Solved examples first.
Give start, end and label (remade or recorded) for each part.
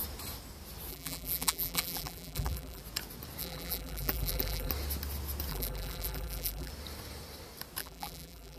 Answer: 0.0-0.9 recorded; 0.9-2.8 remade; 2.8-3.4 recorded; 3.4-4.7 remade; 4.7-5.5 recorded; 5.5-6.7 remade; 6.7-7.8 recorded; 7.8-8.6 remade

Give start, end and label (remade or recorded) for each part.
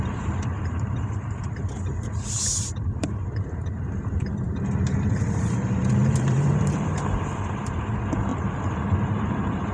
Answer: 0.0-8.3 remade; 8.3-9.7 recorded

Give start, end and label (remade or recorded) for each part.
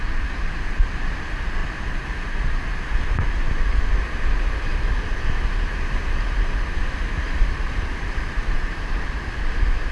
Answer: 0.0-4.7 recorded; 4.7-9.1 remade; 9.1-9.9 recorded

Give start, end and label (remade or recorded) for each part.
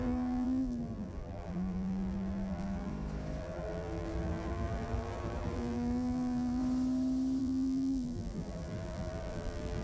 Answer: 0.0-2.9 remade; 2.9-3.4 recorded; 3.4-6.6 remade; 6.6-7.4 recorded; 7.4-9.8 remade